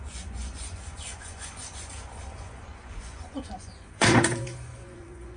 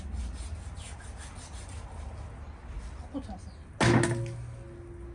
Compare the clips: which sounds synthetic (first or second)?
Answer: first